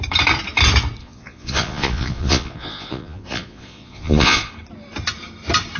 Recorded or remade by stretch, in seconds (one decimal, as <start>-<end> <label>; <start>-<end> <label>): 0.0-1.0 recorded; 1.0-4.5 remade; 4.5-5.8 recorded